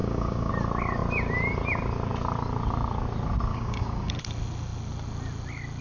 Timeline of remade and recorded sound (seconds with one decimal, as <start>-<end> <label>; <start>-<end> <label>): 0.0-0.5 remade; 0.5-3.5 recorded; 3.5-4.1 remade; 4.1-5.8 recorded